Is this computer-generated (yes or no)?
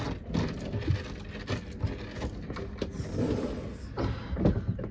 no